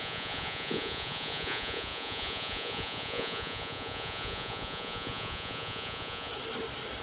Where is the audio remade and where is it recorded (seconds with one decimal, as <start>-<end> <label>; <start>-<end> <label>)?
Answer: 0.0-6.3 remade; 6.3-7.0 recorded